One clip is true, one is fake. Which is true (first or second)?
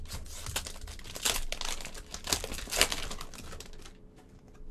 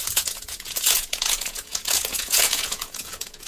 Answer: first